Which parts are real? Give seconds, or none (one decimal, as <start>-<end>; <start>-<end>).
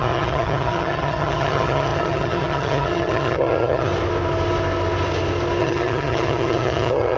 3.9-5.6